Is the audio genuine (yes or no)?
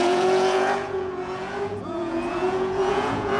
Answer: no